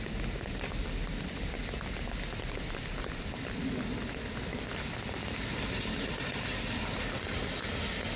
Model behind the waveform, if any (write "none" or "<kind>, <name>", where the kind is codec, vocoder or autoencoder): none